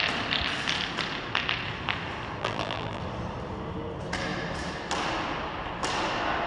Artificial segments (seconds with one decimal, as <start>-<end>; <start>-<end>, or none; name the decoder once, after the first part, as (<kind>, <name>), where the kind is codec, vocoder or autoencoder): 2.4-3.0 (vocoder, BigVGAN v2)